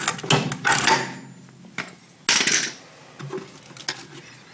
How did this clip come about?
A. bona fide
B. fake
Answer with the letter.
A